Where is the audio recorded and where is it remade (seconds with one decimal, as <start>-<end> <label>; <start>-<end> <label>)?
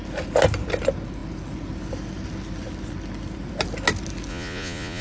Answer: 0.0-4.3 recorded; 4.3-5.0 remade